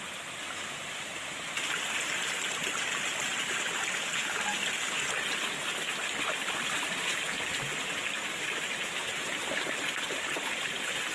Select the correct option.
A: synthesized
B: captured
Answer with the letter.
B